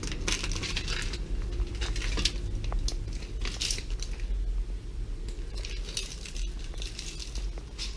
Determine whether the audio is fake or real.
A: real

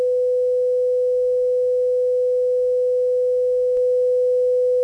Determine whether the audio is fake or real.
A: real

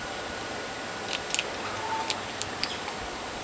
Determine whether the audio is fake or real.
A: real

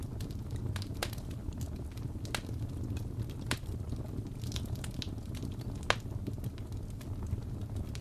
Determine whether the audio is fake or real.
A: real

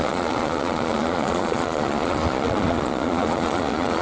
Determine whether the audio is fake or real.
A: fake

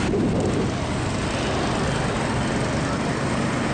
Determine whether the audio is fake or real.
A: real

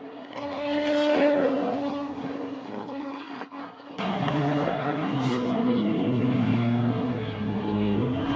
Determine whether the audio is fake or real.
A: fake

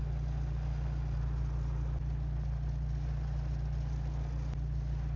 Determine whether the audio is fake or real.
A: real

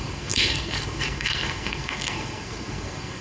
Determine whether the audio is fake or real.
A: fake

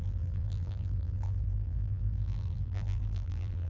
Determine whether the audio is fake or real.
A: fake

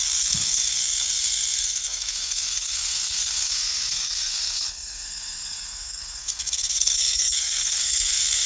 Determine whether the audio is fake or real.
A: fake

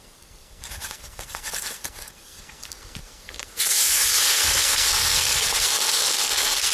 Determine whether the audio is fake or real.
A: fake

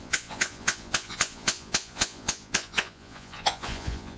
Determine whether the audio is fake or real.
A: fake